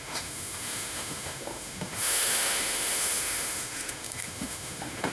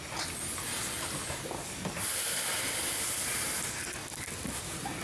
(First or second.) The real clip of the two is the second